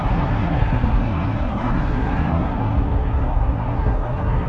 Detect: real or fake fake